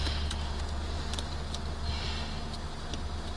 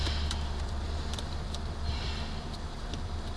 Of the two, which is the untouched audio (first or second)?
first